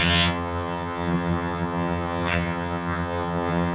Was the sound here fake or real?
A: fake